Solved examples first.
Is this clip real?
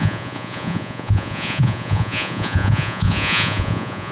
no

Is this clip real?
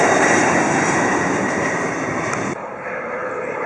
no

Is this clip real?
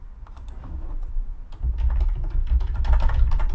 yes